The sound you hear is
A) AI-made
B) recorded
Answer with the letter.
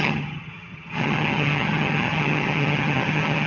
A